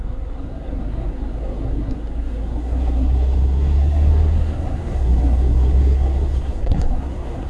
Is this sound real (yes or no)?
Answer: no